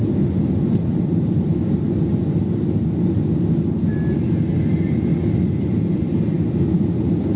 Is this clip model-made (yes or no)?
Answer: no